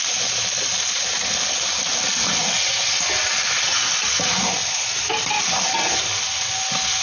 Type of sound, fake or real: real